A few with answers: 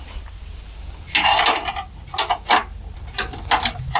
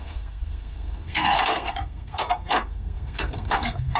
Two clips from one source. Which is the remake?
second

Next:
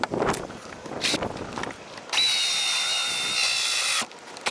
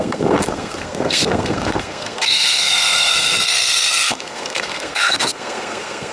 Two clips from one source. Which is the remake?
second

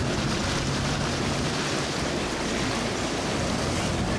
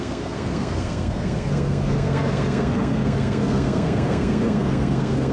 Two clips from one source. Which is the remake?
second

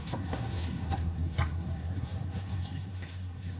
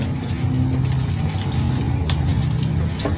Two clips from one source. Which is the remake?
first